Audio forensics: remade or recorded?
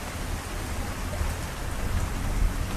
recorded